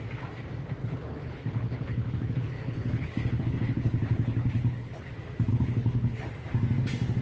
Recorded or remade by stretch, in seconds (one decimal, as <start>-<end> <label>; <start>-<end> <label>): 0.0-0.8 recorded; 0.8-5.1 remade; 5.1-5.5 recorded; 5.5-6.3 remade; 6.3-7.2 recorded